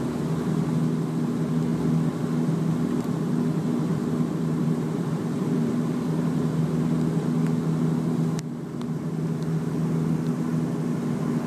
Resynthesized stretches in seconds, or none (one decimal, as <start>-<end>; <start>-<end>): 3.9-6.5

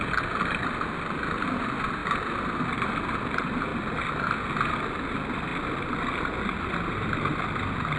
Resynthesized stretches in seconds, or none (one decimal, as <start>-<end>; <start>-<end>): 0.0-2.0; 2.7-3.7; 4.8-8.0

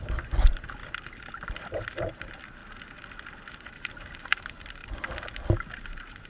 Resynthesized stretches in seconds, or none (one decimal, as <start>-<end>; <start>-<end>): 0.0-0.8; 2.0-2.6; 3.5-4.8; 5.8-6.3